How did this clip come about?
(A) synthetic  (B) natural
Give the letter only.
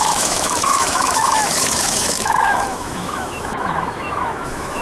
A